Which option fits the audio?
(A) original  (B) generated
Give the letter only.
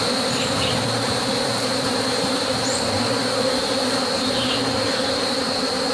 B